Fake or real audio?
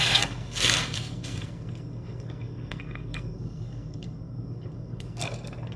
fake